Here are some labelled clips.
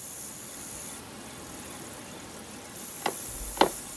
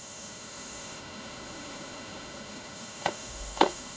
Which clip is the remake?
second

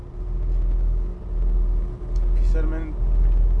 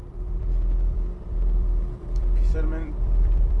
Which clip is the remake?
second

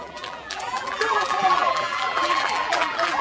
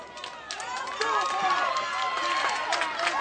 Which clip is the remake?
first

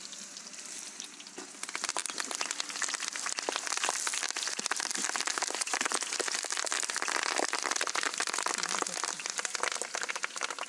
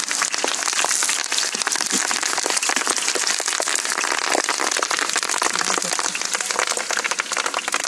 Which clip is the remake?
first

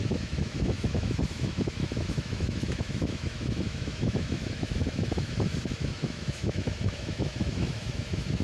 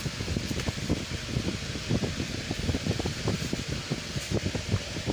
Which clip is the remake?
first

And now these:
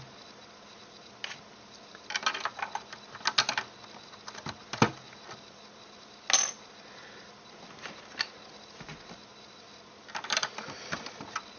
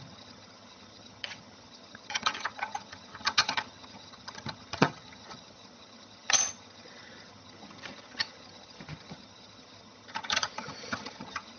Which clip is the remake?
second